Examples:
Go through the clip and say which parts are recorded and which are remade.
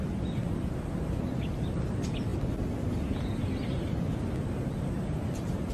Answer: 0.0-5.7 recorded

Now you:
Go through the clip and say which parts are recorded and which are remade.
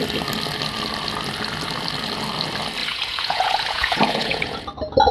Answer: 0.0-2.8 recorded; 2.8-4.6 remade; 4.6-5.1 recorded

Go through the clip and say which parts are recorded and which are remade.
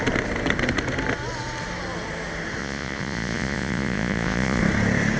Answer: 0.0-2.6 recorded; 2.6-4.6 remade; 4.6-5.2 recorded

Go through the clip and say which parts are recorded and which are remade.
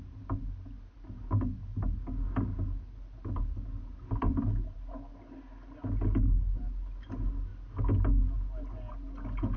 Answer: 0.0-9.6 recorded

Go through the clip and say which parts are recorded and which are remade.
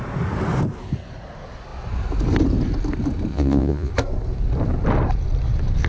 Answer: 0.0-3.3 recorded; 3.3-3.9 remade; 3.9-5.9 recorded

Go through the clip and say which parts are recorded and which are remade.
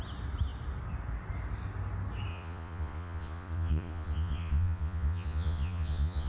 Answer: 0.0-2.3 recorded; 2.3-6.3 remade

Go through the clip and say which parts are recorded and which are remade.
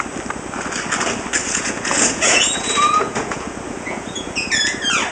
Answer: 0.0-1.4 recorded; 1.4-4.5 remade; 4.5-5.1 recorded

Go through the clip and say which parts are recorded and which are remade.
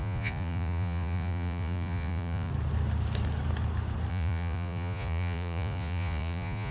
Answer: 0.0-2.5 remade; 2.5-4.1 recorded; 4.1-6.7 remade